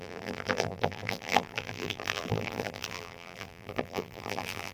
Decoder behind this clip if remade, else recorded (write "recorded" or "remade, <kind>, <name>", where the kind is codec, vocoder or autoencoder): remade, vocoder, BigVGAN v2